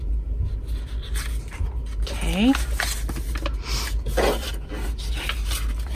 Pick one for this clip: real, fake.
real